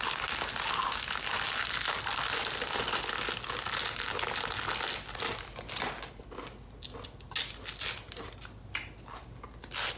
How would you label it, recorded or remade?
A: recorded